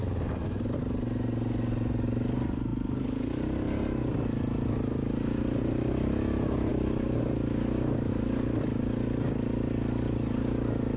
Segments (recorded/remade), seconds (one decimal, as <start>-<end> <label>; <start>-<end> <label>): 0.0-11.0 recorded